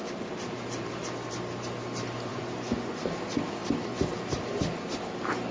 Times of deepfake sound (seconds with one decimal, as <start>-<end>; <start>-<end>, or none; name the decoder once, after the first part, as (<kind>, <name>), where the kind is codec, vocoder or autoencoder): 2.3-3.0 (vocoder, Vocos)